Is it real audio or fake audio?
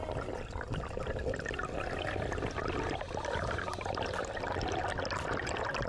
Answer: real